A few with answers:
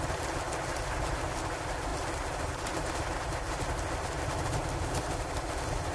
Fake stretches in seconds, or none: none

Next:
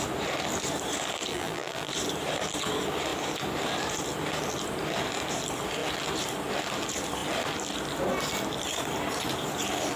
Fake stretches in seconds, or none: 1.3-1.9 (vocoder, BigVGAN v2)

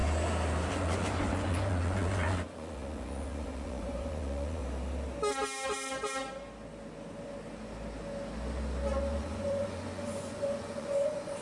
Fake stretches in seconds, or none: 0.7-4.6 (vocoder, Vocos); 9.2-11.4

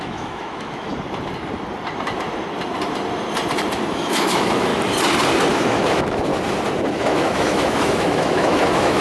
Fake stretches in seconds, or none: 0.0-0.9 (autoencoder, DAC-VAE); 3.9-4.7; 5.5-6.3; 6.9-9.0

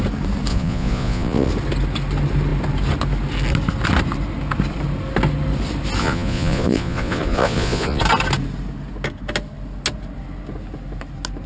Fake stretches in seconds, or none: 0.5-1.5 (vocoder, Vocos); 6.0-8.0

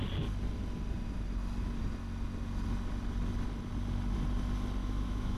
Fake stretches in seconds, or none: 4.8-5.4 (autoencoder, DAC-VAE)

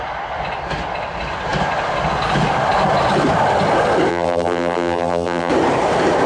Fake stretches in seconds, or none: 4.1-5.5 (vocoder, BigVGAN v2)

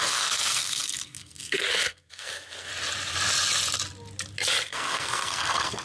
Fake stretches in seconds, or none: 0.0-2.7 (codec, SNAC); 4.7-5.8